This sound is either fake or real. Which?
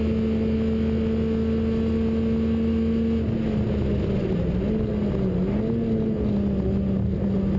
real